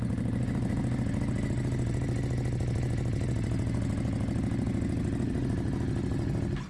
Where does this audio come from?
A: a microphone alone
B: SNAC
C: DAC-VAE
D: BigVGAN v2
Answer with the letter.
A